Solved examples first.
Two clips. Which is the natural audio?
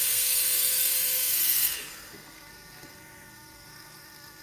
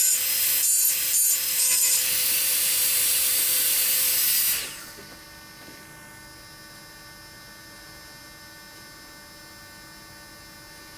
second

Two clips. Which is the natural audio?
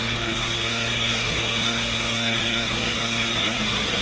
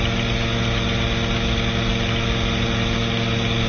second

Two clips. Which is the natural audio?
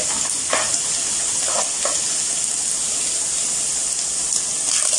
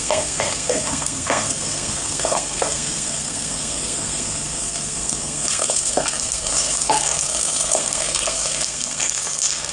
first